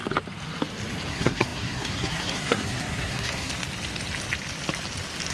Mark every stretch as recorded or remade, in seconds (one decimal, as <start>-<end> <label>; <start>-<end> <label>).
0.0-1.1 recorded; 1.1-3.5 remade; 3.5-5.3 recorded